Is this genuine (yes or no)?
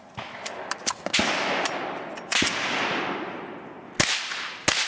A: yes